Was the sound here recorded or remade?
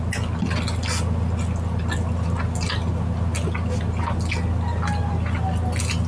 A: recorded